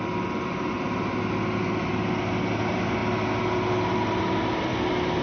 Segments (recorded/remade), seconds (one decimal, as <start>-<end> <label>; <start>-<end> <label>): 0.0-5.2 recorded